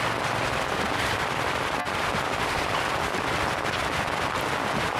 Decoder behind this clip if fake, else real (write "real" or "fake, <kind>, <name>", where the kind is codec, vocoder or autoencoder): real